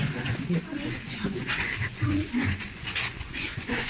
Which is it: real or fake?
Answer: fake